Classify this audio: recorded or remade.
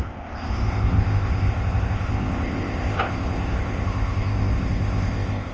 remade